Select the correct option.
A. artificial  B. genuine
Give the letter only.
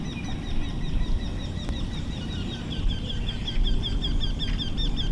B